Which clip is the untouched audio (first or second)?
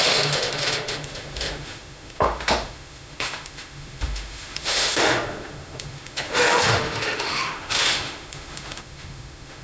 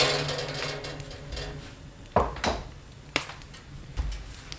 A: second